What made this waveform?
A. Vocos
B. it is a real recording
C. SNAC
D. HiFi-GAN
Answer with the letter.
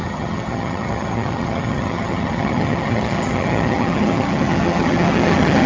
D